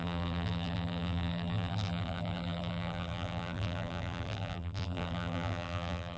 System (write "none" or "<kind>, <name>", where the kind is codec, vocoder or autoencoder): vocoder, BigVGAN v2